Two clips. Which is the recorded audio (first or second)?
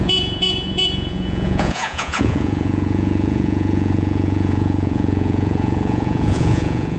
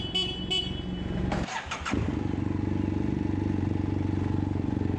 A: second